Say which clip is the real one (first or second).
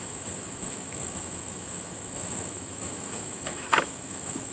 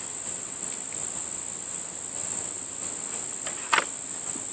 second